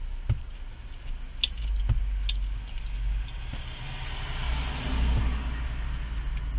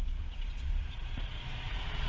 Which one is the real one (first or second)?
first